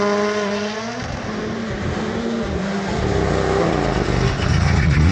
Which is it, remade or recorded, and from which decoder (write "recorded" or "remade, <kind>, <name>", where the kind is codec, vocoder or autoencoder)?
recorded